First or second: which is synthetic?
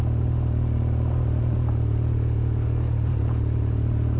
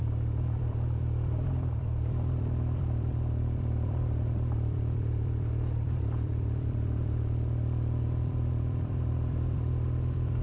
second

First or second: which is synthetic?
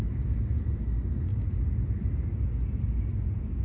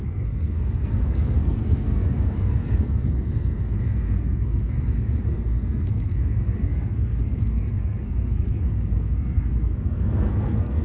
second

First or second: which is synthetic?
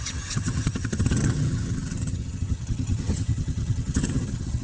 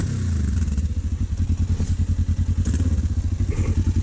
first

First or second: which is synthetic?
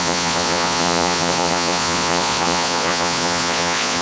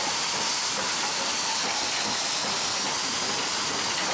first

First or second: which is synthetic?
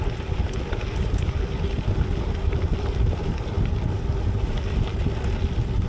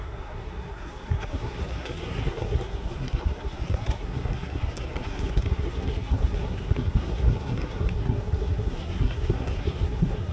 second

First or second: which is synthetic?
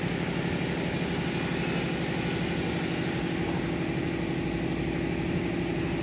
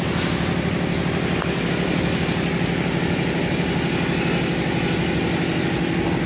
second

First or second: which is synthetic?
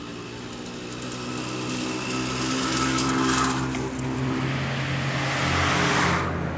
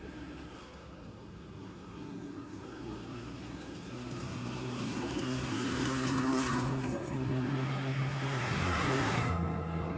second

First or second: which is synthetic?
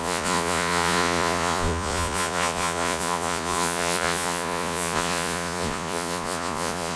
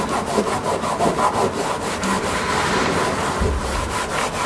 first